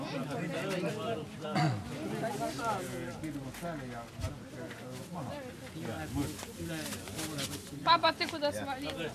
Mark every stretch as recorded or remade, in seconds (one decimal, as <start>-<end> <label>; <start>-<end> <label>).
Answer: 0.0-7.8 recorded; 7.8-8.3 remade; 8.3-9.1 recorded